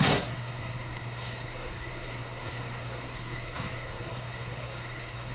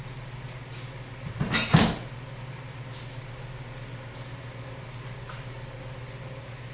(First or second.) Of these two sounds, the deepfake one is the first